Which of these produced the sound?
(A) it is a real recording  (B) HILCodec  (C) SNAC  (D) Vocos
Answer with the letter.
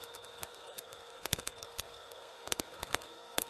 C